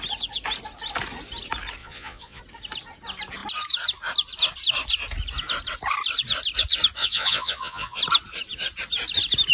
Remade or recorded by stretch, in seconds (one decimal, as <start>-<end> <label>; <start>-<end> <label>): 0.0-1.8 recorded; 1.8-2.4 remade; 2.4-7.0 recorded; 7.0-8.0 remade; 8.0-9.5 recorded